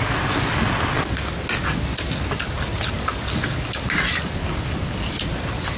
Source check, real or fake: real